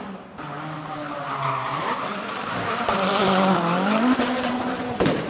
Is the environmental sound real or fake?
fake